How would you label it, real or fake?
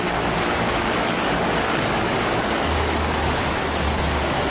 fake